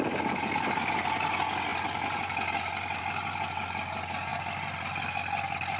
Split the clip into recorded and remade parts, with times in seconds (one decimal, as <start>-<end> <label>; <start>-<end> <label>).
0.0-1.7 recorded; 1.7-3.0 remade; 3.0-4.3 recorded; 4.3-5.8 remade